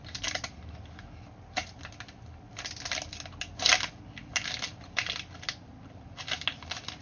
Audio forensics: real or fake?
real